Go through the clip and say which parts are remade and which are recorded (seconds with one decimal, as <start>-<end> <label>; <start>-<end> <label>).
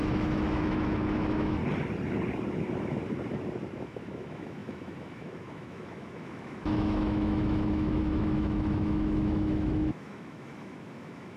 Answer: 0.0-1.6 remade; 1.6-3.8 recorded; 3.8-11.4 remade